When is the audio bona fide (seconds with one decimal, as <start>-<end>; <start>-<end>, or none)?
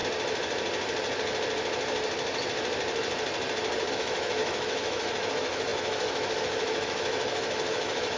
0.0-3.9